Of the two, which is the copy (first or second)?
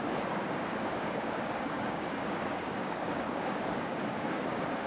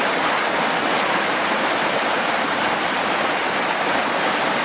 first